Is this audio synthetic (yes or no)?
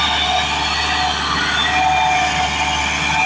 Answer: no